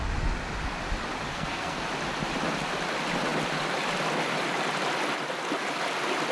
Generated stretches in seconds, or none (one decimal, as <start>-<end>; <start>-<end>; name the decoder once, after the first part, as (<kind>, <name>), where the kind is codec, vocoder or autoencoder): 1.3-1.9 (codec, SNAC)